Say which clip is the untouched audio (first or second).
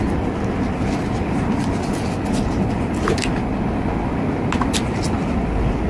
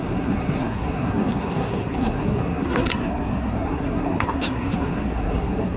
first